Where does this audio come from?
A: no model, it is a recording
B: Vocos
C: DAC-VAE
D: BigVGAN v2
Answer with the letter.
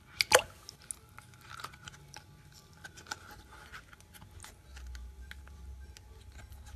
A